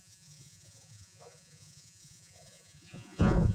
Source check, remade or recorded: remade